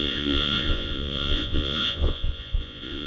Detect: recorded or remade remade